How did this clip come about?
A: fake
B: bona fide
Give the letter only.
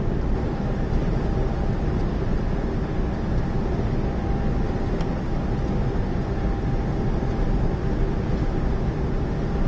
B